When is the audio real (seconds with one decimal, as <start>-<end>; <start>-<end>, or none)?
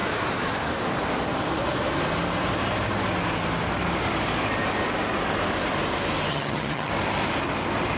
0.0-6.3; 6.9-8.0